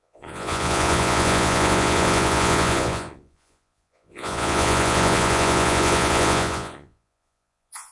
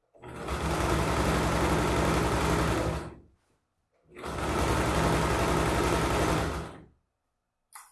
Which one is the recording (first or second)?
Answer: second